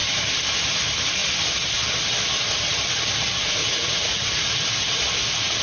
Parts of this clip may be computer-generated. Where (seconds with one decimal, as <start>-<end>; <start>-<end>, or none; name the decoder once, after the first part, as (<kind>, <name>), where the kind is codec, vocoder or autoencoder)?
3.6-4.5 (vocoder, Vocos)